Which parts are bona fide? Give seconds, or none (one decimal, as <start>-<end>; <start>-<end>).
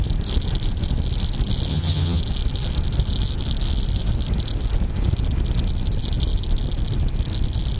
0.0-1.7; 2.2-7.8